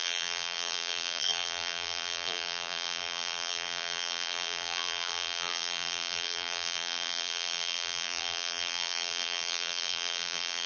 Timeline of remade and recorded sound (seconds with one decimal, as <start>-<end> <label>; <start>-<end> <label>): 0.0-10.7 remade